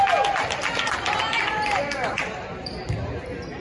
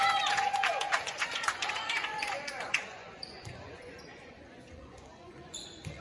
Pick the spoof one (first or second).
second